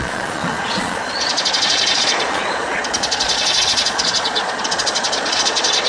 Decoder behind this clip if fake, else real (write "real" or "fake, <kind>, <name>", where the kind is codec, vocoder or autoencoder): fake, vocoder, Vocos